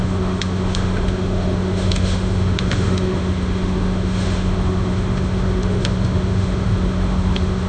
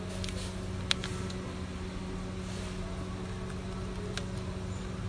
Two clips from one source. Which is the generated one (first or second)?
first